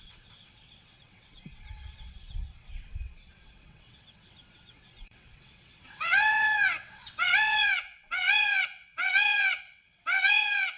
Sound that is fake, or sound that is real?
fake